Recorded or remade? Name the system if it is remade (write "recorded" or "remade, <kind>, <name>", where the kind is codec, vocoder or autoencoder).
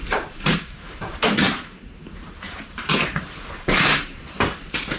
remade, vocoder, BigVGAN v2